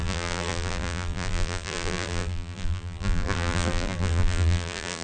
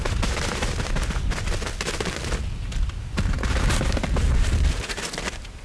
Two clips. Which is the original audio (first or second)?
second